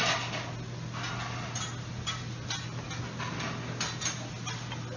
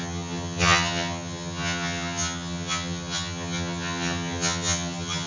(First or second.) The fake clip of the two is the second